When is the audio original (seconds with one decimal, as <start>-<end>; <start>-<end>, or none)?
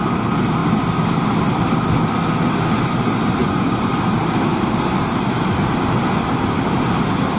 0.0-3.4; 3.9-7.4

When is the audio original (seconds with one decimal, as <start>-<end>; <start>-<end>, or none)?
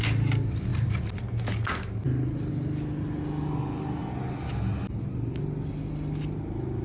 0.0-6.8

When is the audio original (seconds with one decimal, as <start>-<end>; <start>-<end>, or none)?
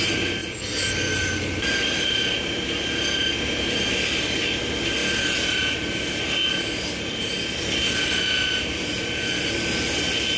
0.0-10.4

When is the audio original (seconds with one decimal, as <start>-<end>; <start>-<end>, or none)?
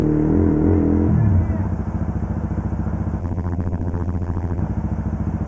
0.0-3.2; 4.6-5.5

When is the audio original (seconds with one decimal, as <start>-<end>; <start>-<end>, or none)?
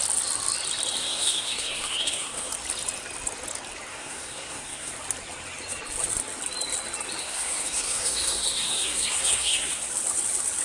0.0-1.0; 2.5-3.9; 4.9-7.2; 9.7-10.6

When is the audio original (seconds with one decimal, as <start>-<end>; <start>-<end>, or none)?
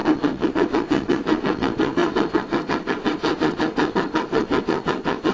none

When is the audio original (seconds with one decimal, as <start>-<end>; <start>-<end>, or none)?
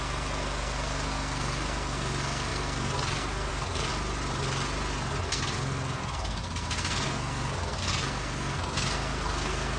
3.9-5.2